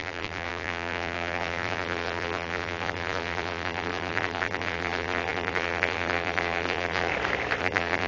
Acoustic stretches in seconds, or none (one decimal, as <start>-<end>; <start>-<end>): 7.1-7.6